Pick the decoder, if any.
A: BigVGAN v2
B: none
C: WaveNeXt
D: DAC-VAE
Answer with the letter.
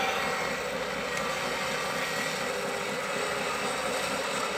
B